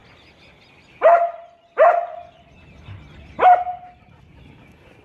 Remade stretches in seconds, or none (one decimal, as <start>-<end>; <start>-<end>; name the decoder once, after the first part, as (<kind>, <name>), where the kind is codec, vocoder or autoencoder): none